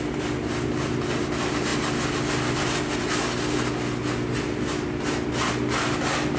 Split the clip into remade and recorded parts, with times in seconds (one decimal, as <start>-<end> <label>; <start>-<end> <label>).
0.0-6.4 recorded